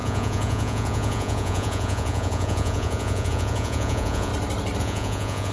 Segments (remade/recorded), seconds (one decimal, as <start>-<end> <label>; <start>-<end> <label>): 0.0-4.3 remade; 4.3-4.8 recorded; 4.8-5.5 remade

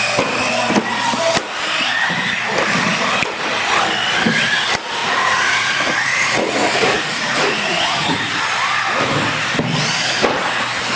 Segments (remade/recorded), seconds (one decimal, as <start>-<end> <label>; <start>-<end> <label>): 0.0-5.0 recorded; 5.0-8.4 remade; 8.4-10.9 recorded

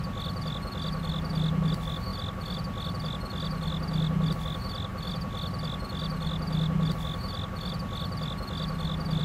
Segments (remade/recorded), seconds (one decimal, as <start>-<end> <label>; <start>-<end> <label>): 0.0-9.2 recorded

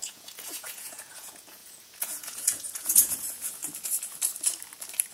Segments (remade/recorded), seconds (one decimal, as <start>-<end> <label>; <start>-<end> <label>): 0.0-3.6 remade; 3.6-5.1 recorded